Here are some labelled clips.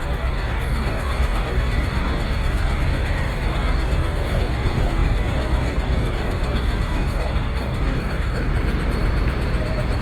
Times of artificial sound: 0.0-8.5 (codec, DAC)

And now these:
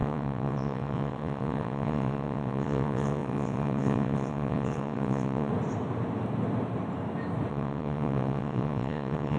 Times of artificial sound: 0.0-5.5 (vocoder, WaveNeXt); 7.5-9.4

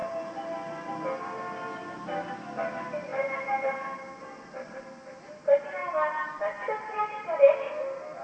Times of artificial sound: none

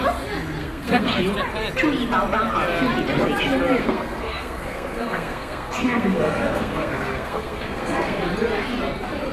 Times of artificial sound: 0.6-1.2 (codec, SNAC); 3.8-8.2

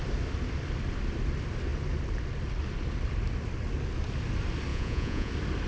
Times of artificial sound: 4.7-5.3 (vocoder, Vocos)